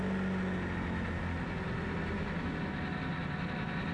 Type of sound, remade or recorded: recorded